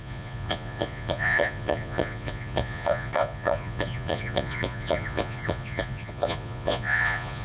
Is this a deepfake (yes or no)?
yes